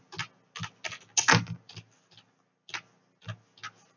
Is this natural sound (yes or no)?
yes